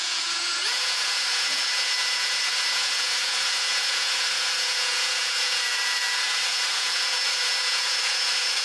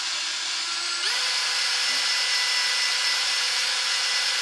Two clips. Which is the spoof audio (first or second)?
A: first